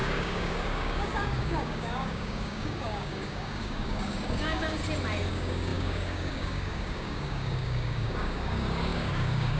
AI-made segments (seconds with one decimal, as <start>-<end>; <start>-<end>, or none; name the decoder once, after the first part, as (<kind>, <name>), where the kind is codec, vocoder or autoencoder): 0.0-4.8 (codec, DAC); 5.3-9.6